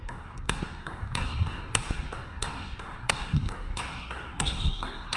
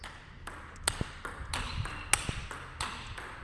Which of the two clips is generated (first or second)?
first